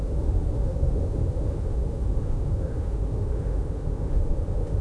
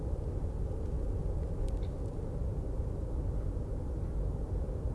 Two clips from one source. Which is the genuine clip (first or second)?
second